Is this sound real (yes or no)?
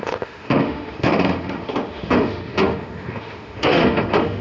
no